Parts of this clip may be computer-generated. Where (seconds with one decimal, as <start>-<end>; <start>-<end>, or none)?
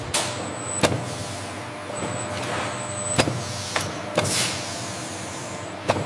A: none